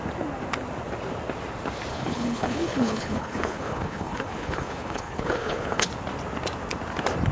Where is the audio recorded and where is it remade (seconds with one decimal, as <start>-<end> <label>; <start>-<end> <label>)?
0.0-1.9 recorded; 1.9-5.9 remade; 5.9-7.3 recorded